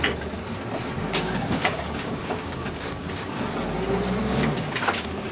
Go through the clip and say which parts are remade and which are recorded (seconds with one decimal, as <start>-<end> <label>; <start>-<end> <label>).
0.0-1.0 recorded; 1.0-3.3 remade; 3.3-4.2 recorded; 4.2-5.3 remade